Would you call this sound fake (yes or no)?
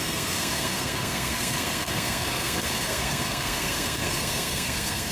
yes